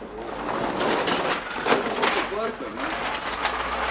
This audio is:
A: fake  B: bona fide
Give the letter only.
B